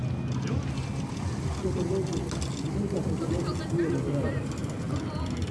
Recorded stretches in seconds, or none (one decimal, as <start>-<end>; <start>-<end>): 0.0-5.5